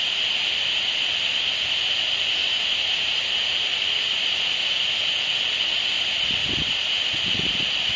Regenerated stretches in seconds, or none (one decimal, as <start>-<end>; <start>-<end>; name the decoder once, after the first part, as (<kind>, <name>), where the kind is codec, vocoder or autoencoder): 2.4-5.0 (vocoder, BigVGAN v2); 6.4-7.6